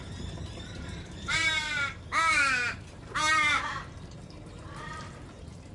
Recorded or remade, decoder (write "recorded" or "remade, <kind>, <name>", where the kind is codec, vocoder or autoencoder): remade, vocoder, BigVGAN v2